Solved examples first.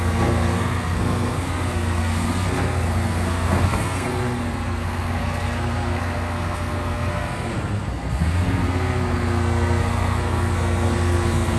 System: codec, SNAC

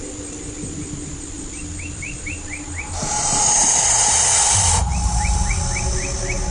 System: none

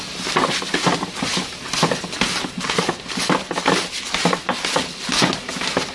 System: none